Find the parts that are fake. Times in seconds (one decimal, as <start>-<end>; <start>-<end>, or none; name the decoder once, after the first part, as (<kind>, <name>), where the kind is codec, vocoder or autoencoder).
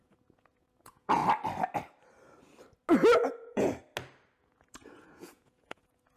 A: 0.0-1.2 (vocoder, Vocos); 3.4-3.8; 4.4-6.2